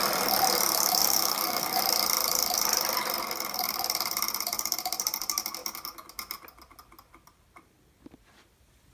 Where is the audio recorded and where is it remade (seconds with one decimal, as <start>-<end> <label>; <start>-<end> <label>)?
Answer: 0.0-1.0 recorded; 1.0-1.8 remade; 1.8-8.9 recorded